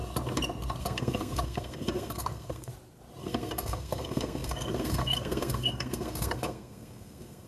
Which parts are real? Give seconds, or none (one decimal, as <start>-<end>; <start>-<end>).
0.0-0.8; 2.7-3.2